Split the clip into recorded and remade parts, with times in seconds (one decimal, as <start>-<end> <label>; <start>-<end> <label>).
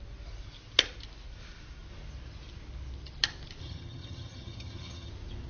0.0-3.6 recorded; 3.6-5.1 remade; 5.1-5.5 recorded